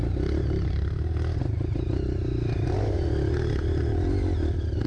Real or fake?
real